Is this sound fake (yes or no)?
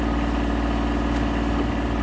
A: no